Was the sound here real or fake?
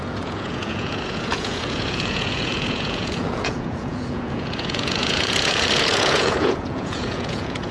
fake